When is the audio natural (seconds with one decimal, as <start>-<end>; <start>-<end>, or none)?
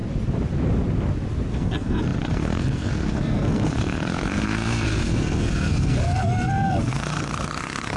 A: 0.0-1.5